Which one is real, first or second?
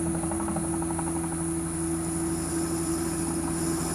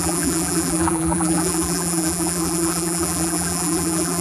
first